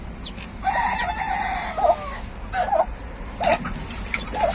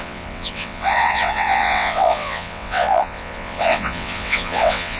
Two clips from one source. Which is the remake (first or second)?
second